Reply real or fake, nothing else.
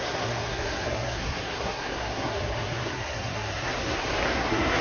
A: fake